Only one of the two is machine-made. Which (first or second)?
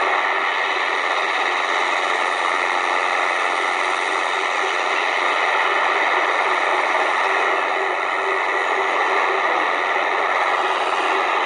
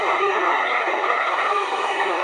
second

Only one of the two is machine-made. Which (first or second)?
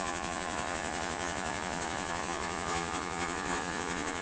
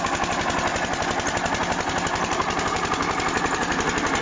first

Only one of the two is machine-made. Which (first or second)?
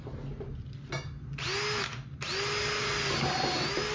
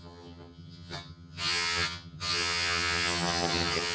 second